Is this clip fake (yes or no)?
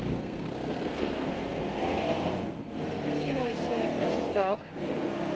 yes